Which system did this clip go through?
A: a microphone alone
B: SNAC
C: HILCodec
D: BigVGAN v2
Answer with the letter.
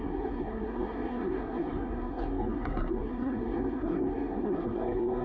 B